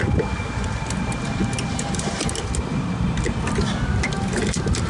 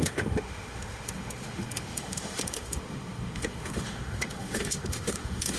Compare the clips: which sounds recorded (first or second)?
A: first